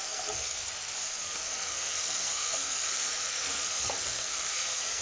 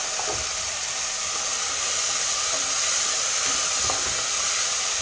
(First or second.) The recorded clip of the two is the second